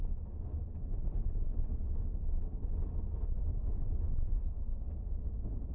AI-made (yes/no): no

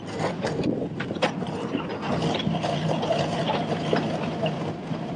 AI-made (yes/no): no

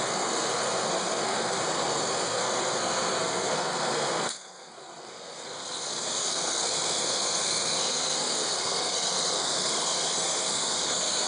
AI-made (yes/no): yes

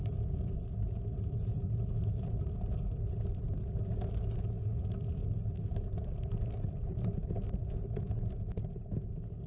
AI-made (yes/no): no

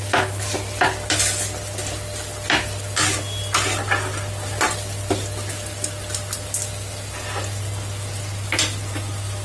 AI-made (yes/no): no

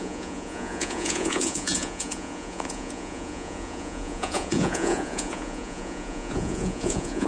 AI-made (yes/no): yes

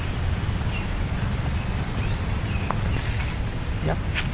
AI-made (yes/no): no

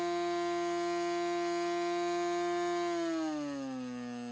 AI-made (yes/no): no